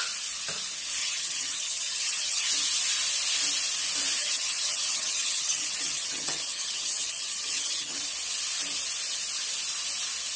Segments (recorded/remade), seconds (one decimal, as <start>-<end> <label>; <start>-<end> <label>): 0.0-1.0 recorded; 1.0-2.5 remade; 2.5-4.2 recorded; 4.2-8.0 remade; 8.0-10.4 recorded